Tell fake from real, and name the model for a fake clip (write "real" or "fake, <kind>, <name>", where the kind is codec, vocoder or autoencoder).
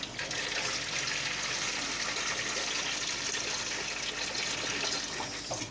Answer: real